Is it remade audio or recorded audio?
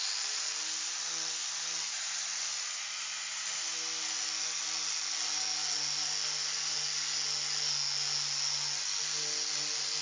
recorded